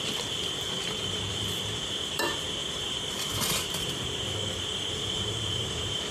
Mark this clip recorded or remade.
remade